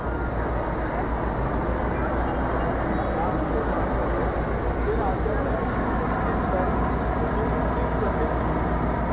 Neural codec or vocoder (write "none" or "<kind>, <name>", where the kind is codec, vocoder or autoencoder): none